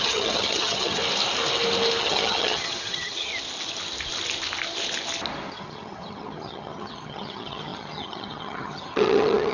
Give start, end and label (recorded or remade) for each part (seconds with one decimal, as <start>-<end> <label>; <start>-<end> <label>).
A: 0.0-1.0 remade; 1.0-2.0 recorded; 2.0-3.3 remade; 3.3-5.5 recorded; 5.5-9.5 remade